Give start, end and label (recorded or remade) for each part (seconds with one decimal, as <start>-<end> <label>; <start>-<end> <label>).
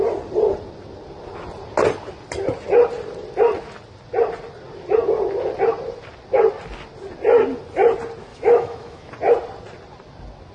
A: 0.0-8.3 recorded; 8.3-9.1 remade; 9.1-10.5 recorded